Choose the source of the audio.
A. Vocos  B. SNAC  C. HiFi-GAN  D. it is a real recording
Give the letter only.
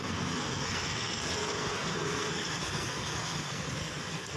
B